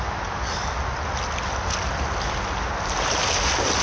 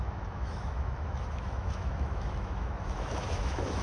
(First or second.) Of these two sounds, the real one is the first